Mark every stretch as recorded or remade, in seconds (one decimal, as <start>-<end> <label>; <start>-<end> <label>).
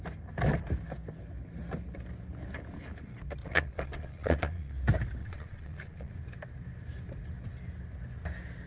0.0-3.4 recorded; 3.4-4.7 remade; 4.7-5.2 recorded; 5.2-6.1 remade; 6.1-8.7 recorded